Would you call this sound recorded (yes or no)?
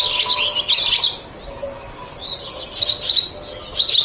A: yes